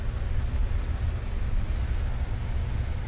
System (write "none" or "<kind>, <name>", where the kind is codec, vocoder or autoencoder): none